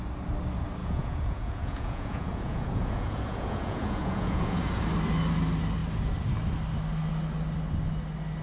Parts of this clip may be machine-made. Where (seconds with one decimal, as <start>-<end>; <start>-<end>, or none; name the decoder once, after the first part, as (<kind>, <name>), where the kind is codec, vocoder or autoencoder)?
0.8-4.8 (vocoder, Vocos)